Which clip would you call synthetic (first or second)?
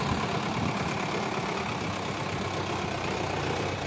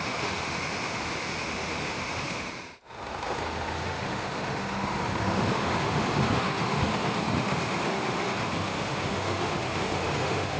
second